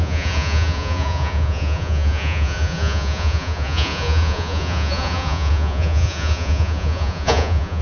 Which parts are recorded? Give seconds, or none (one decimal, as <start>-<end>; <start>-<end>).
none